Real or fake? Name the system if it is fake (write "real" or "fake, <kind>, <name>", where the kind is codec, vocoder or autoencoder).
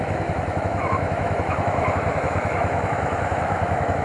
fake, autoencoder, DAC-VAE